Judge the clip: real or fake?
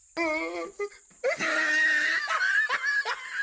real